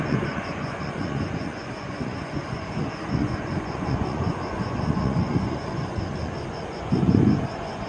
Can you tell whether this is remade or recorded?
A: remade